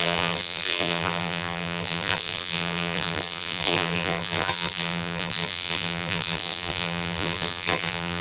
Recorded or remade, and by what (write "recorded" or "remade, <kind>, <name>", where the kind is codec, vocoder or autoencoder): remade, vocoder, BigVGAN v2